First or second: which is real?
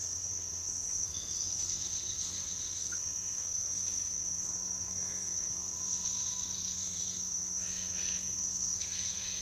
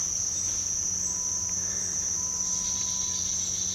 second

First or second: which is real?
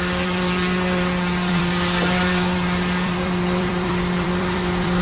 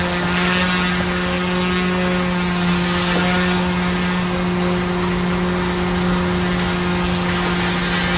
second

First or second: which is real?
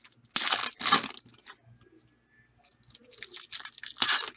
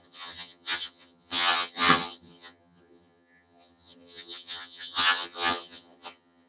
first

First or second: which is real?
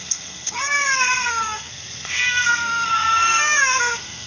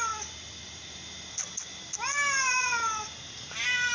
second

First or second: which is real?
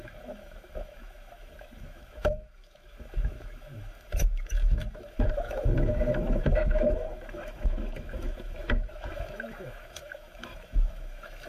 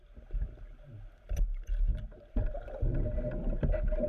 second